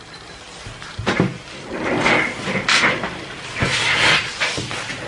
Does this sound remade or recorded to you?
recorded